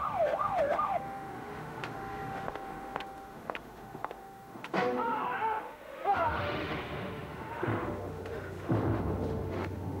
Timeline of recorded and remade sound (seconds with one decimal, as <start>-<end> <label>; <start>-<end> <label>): 0.0-10.0 remade